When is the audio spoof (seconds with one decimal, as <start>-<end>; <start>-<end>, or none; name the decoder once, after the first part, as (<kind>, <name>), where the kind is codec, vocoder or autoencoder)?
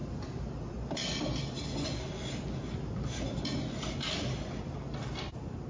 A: none